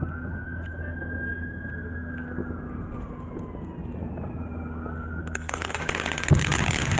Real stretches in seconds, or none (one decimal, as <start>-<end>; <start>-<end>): 0.0-5.2; 5.8-7.0